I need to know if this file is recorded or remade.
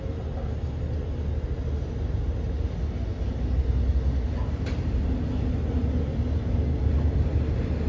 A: recorded